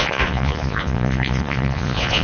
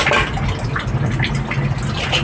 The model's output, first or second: first